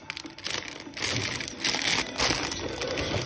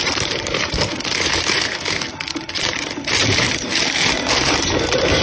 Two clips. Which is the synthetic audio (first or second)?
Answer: second